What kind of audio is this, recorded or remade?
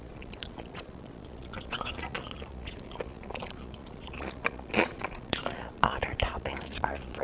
remade